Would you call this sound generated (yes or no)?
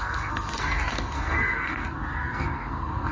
yes